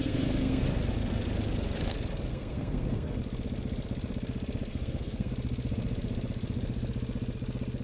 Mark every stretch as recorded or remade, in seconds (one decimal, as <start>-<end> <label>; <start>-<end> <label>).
0.0-0.6 remade; 0.6-2.3 recorded; 2.3-3.2 remade; 3.2-4.7 recorded; 4.7-5.3 remade; 5.3-7.8 recorded